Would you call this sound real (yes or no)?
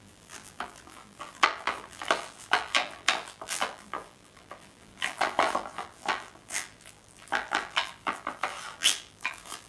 no